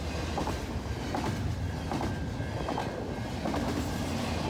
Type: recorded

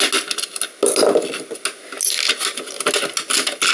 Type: recorded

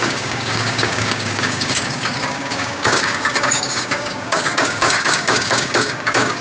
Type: remade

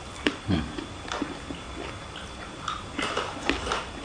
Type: recorded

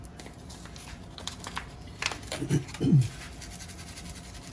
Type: recorded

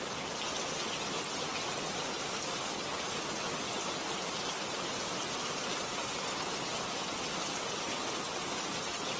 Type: recorded